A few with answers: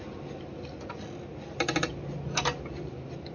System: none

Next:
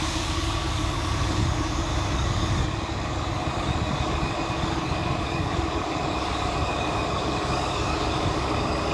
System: codec, DAC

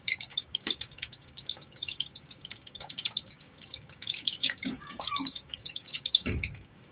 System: codec, DAC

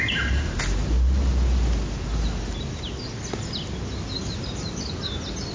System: none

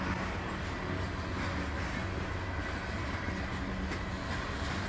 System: none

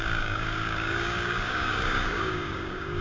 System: codec, DAC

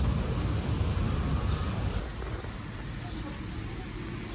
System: none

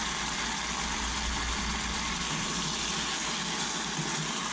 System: none